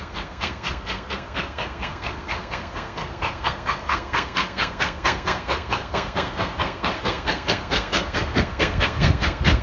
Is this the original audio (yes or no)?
no